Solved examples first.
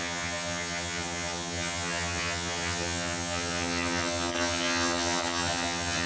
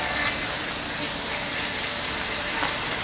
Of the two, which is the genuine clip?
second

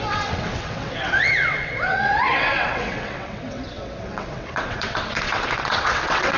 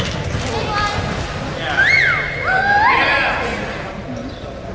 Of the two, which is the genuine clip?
second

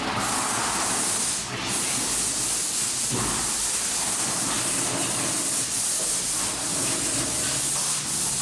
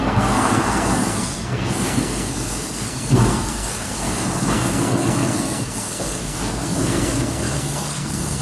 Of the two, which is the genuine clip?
first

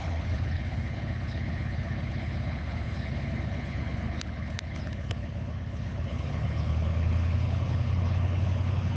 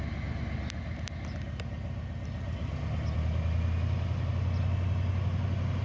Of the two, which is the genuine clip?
second